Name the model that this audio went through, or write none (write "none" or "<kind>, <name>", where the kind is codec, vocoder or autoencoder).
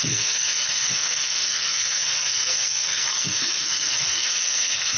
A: codec, SNAC